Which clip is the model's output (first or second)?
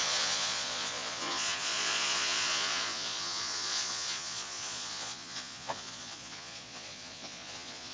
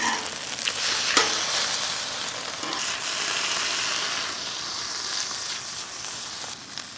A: first